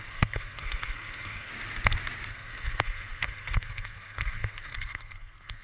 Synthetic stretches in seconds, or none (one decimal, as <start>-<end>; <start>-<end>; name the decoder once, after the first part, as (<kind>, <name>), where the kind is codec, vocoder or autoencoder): 0.0-1.5 (codec, SNAC); 2.3-5.6